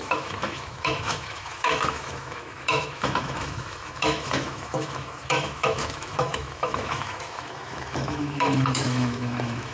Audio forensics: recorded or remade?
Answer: remade